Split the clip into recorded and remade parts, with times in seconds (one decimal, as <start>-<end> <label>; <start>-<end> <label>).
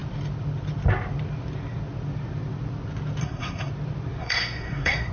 0.0-3.2 recorded; 3.2-3.7 remade; 3.7-4.2 recorded; 4.2-5.1 remade